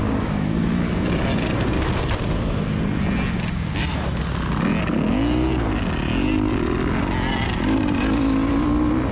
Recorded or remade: recorded